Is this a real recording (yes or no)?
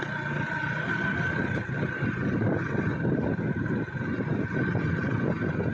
yes